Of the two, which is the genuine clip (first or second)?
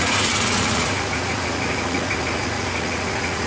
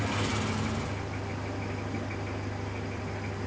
second